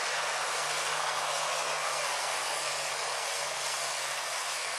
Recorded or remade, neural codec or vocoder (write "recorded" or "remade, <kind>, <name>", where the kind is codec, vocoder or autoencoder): remade, codec, SNAC